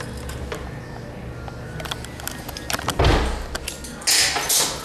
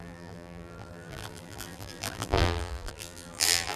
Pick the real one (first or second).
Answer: first